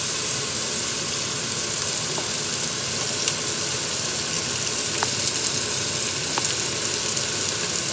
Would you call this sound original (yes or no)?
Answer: yes